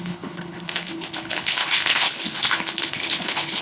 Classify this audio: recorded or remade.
remade